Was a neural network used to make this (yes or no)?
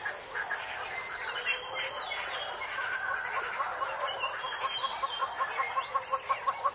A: no